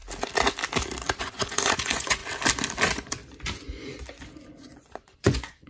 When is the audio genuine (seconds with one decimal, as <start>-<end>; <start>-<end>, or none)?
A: 0.0-1.2; 2.2-2.8; 3.2-4.5

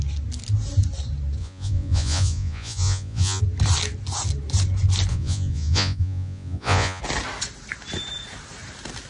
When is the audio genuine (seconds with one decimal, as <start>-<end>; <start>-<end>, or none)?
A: 0.0-1.4; 3.4-5.1; 7.0-9.1

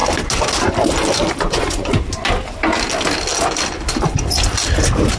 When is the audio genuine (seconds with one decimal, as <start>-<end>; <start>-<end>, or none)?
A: 0.0-1.4; 1.9-5.2

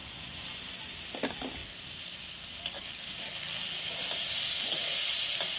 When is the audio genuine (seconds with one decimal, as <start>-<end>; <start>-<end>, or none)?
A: 0.9-5.6

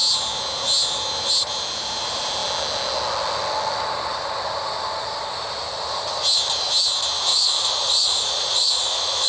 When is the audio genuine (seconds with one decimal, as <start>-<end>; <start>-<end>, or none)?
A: 0.0-7.3

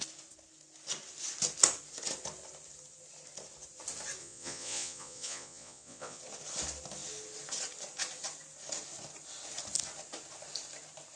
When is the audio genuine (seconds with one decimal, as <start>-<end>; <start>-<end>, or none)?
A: 0.0-4.2; 6.2-11.2

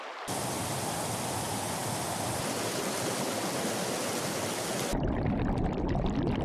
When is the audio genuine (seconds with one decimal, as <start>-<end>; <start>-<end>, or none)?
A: 0.0-6.4